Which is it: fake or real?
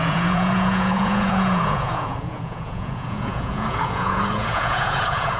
fake